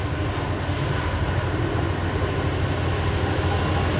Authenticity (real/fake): real